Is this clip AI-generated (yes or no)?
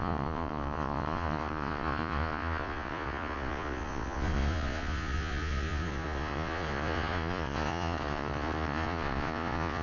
yes